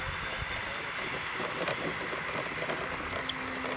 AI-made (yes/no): no